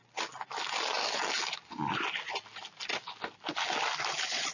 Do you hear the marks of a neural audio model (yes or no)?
no